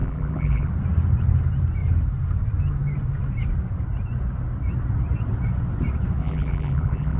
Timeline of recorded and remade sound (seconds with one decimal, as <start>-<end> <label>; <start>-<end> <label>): 0.0-0.7 remade; 0.7-6.2 recorded; 6.2-7.2 remade